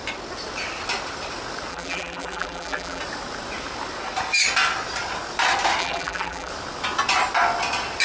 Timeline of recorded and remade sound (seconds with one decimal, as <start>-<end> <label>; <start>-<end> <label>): 0.0-1.7 recorded; 1.7-3.0 remade; 3.0-5.8 recorded; 5.8-6.5 remade; 6.5-8.0 recorded